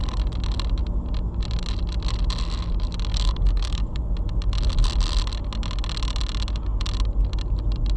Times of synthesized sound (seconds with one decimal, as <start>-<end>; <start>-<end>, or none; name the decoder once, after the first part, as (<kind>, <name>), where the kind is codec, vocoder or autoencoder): 3.1-4.0 (codec, DAC)